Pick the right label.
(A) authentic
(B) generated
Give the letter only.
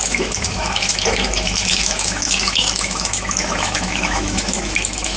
B